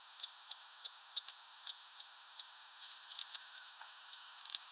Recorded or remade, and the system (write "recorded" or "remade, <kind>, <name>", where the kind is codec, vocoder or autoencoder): remade, autoencoder, DAC-VAE